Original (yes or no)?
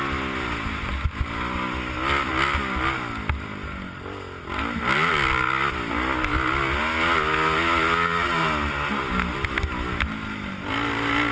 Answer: yes